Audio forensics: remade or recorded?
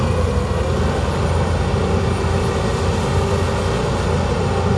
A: recorded